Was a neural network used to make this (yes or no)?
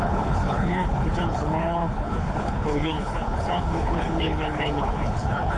yes